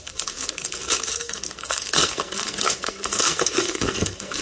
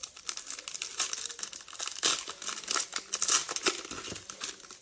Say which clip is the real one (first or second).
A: second